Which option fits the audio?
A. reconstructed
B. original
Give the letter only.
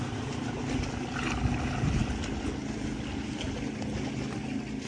B